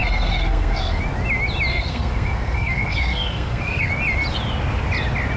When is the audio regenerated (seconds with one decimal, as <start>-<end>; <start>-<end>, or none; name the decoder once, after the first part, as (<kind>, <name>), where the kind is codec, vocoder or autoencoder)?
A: 0.0-1.0 (codec, SNAC); 1.7-3.9